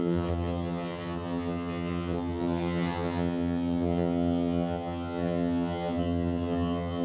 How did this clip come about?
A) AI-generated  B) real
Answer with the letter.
A